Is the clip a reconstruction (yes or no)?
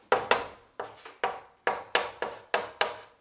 no